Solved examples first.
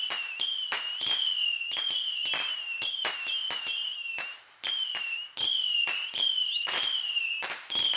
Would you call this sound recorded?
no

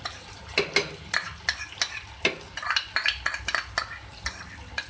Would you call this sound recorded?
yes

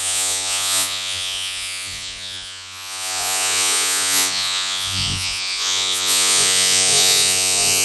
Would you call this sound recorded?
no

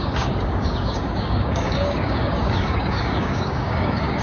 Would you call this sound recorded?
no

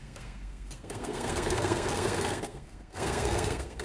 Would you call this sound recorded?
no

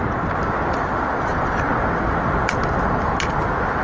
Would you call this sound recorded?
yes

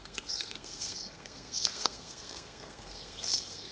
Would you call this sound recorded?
no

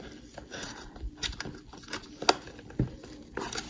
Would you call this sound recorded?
yes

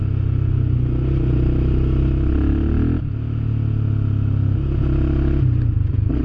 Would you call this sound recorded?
yes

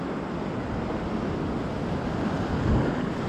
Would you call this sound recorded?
no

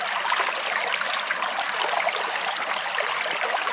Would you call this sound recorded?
yes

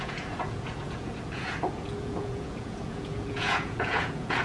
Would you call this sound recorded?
no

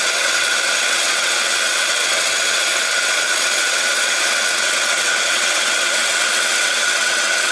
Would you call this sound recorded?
no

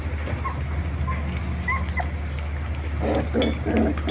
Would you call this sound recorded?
yes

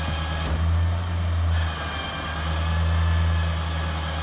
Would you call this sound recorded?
yes